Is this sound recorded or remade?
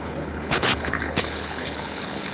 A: remade